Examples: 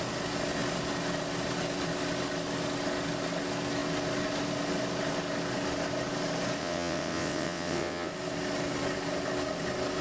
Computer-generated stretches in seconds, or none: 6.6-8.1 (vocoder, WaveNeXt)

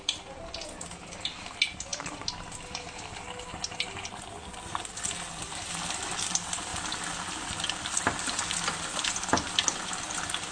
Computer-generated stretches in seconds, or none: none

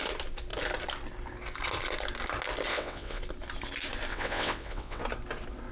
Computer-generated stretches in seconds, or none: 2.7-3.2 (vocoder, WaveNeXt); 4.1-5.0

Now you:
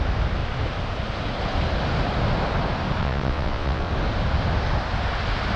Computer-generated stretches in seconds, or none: 3.0-3.9 (vocoder, WaveNeXt)

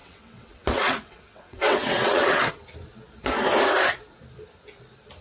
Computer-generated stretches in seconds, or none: 0.0-2.5 (vocoder, WaveNeXt)